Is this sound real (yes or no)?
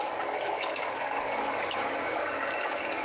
no